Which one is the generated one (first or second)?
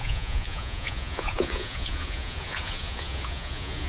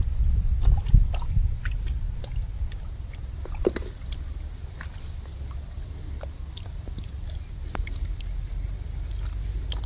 first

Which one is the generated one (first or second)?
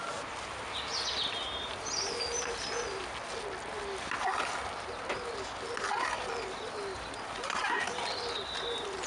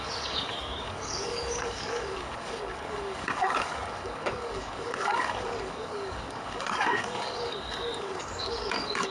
second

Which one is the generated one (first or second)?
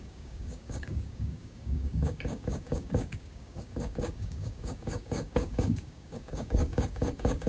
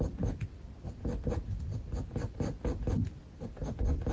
first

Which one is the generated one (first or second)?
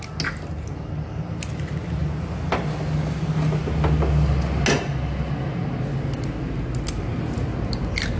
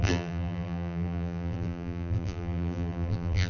second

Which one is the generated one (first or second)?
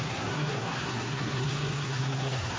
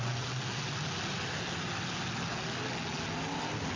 first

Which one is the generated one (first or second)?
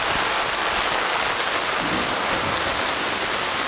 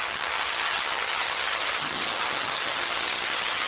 second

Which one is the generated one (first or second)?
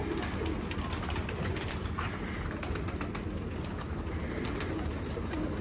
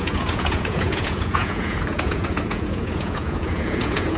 second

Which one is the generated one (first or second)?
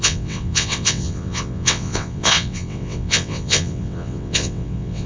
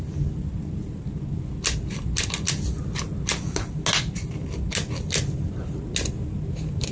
first